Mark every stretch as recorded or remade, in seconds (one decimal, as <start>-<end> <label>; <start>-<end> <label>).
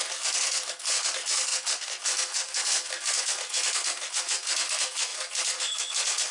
0.0-6.3 remade